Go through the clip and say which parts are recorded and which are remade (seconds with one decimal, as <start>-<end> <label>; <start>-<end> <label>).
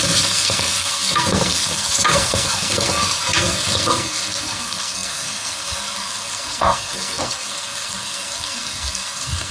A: 0.0-9.5 remade